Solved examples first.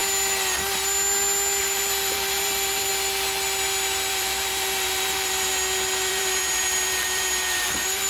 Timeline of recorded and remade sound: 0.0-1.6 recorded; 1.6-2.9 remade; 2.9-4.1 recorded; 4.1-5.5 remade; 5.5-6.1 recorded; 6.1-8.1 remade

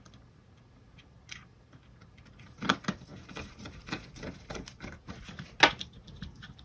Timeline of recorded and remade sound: 0.0-6.6 recorded

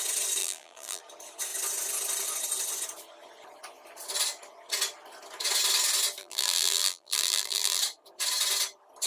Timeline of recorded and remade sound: 0.0-0.4 recorded; 0.4-1.0 remade; 1.0-6.2 recorded; 6.2-7.8 remade; 7.8-9.1 recorded

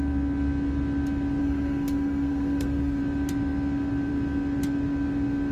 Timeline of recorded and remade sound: 0.0-1.4 recorded; 1.4-3.0 remade; 3.0-5.5 recorded

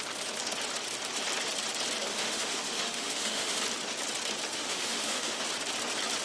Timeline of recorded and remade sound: 0.0-2.1 recorded; 2.1-3.6 remade; 3.6-4.5 recorded; 4.5-5.4 remade; 5.4-6.2 recorded

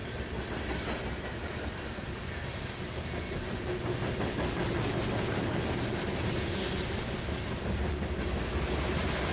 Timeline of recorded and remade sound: 0.0-9.3 recorded

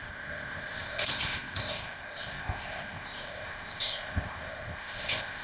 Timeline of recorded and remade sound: 0.0-5.4 remade

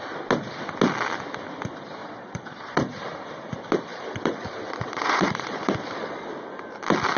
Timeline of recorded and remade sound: 0.0-2.0 recorded; 2.0-3.0 remade; 3.0-3.9 recorded; 3.9-6.3 remade; 6.3-7.2 recorded